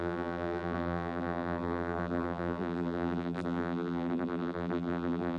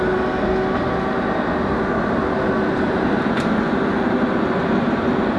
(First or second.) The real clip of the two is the second